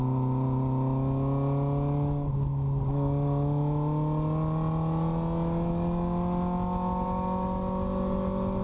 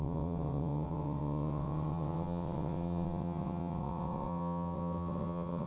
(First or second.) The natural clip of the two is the first